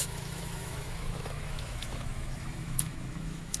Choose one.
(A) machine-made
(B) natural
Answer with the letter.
A